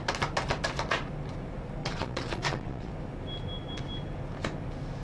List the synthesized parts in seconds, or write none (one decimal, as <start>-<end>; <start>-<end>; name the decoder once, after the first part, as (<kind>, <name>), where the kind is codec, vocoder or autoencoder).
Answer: 1.8-2.9 (vocoder, Vocos)

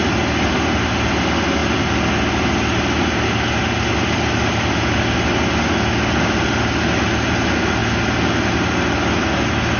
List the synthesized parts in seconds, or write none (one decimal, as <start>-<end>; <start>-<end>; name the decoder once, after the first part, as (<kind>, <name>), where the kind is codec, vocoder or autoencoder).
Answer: none

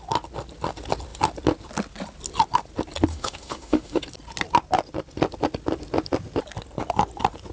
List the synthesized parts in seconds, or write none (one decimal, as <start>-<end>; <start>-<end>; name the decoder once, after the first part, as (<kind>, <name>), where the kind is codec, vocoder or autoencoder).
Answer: 3.1-4.0 (autoencoder, DAC-VAE)

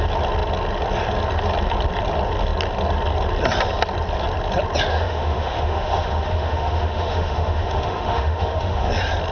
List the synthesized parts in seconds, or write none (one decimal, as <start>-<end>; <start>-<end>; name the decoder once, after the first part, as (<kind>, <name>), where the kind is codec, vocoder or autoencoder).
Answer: 4.9-8.9 (autoencoder, DAC-VAE)

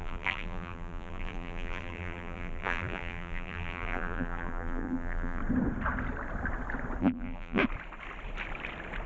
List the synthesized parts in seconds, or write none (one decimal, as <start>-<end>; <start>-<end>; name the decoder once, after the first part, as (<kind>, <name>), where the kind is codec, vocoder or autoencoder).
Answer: 0.0-5.4 (vocoder, BigVGAN v2); 7.0-7.6